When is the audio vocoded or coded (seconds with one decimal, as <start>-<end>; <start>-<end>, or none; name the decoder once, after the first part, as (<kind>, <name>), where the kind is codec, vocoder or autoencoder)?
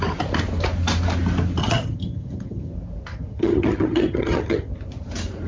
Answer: 1.6-2.7 (vocoder, HiFi-GAN); 3.1-4.7